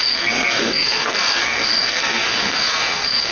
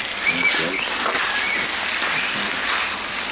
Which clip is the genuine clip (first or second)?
second